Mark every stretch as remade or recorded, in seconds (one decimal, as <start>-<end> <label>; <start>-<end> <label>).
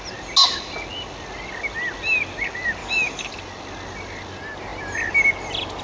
0.0-2.8 recorded; 2.8-3.3 remade; 3.3-5.8 recorded